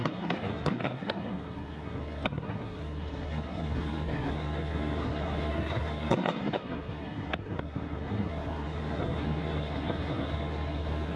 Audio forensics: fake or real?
fake